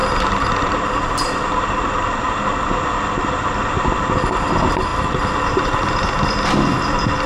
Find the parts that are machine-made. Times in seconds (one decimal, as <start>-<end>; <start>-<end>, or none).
0.0-2.4